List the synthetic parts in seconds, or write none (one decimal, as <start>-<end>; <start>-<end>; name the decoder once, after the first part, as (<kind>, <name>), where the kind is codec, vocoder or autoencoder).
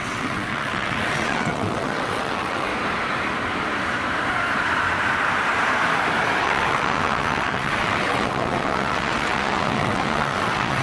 0.0-2.7 (vocoder, WaveNeXt); 6.4-10.8